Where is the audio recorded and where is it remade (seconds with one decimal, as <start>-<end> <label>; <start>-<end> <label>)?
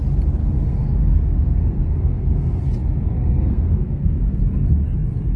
0.0-0.4 recorded; 0.4-2.6 remade; 2.6-3.1 recorded; 3.1-4.4 remade; 4.4-5.4 recorded